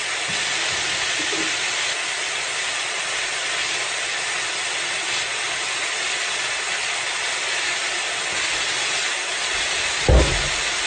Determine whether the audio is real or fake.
real